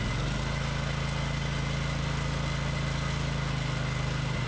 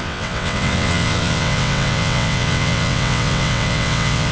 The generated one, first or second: second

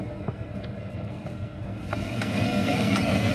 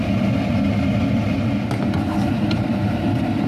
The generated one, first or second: first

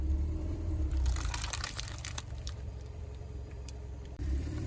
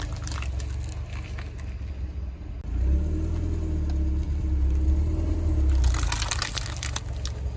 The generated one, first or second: first